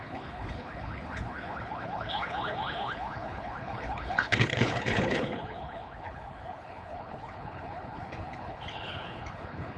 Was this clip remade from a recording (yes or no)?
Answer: yes